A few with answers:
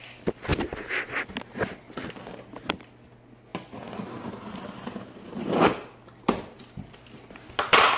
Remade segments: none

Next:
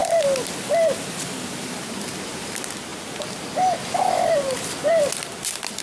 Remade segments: none

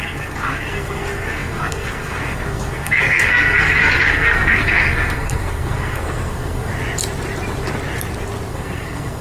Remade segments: 0.0-6.7 (codec, SNAC); 8.5-9.2

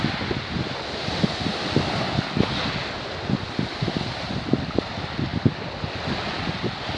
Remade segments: 3.7-4.3 (vocoder, BigVGAN v2)

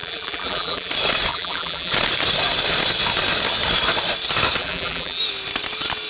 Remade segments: 0.0-0.9 (vocoder, BigVGAN v2); 1.3-1.9; 4.6-5.2

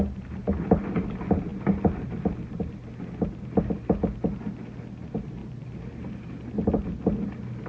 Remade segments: none

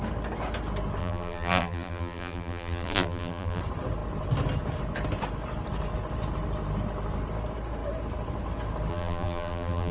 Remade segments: 1.0-3.6 (vocoder, BigVGAN v2); 8.9-9.9

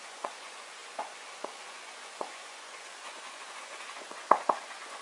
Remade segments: 0.0-5.0 (vocoder, Vocos)